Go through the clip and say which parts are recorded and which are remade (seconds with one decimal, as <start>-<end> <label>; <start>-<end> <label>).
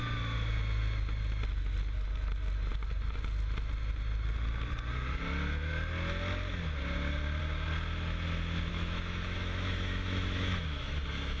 0.0-8.7 recorded; 8.7-11.0 remade; 11.0-11.4 recorded